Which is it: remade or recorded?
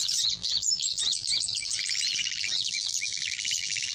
remade